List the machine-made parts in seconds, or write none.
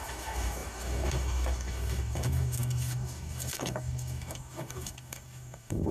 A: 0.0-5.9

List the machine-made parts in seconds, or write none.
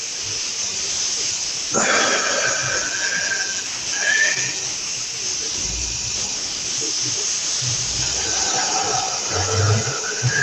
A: 0.0-2.6; 5.2-10.4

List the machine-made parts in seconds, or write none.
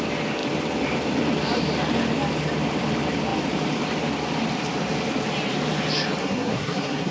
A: 6.2-7.1